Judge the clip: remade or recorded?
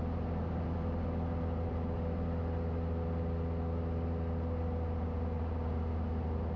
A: recorded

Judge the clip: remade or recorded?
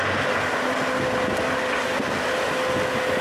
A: recorded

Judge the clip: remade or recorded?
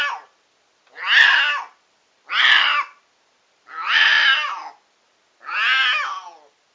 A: recorded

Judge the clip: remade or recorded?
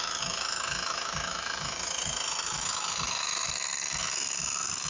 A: remade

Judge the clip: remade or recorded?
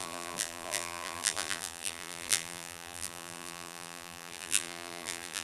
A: remade